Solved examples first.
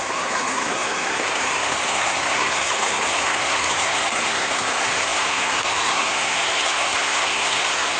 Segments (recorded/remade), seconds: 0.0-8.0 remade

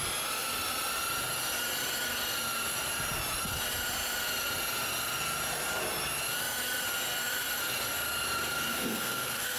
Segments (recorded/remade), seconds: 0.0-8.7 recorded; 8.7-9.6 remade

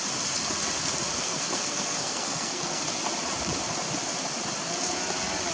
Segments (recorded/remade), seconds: 0.0-1.1 recorded; 1.1-2.8 remade; 2.8-5.5 recorded